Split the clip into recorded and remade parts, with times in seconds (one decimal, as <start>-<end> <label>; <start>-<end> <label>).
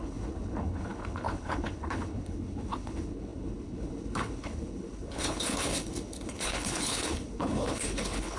0.0-8.4 remade